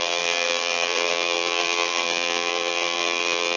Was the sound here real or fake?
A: fake